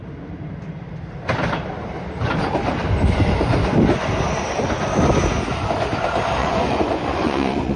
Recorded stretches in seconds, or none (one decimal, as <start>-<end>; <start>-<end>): 0.0-6.4

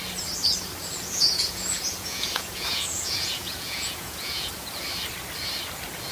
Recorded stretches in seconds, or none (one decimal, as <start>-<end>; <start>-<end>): 0.0-0.8; 4.5-6.1

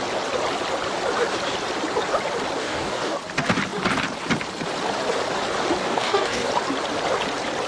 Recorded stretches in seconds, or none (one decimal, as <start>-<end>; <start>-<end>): 0.0-2.6; 3.2-5.8; 6.5-7.7

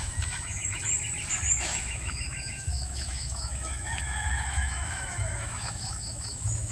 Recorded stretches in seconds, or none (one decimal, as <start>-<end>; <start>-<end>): 0.8-1.5